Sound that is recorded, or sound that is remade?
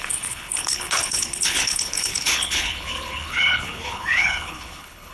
remade